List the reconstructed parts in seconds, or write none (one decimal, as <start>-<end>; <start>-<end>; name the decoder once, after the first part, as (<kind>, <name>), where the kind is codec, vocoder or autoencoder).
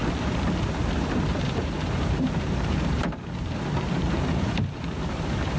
1.1-5.6 (vocoder, BigVGAN v2)